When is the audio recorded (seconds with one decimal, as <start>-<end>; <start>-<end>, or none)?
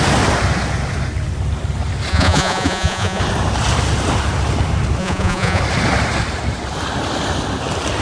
0.0-2.1; 3.2-5.0; 5.6-8.0